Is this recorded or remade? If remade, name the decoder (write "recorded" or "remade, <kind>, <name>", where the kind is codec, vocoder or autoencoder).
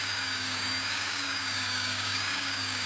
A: remade, codec, DAC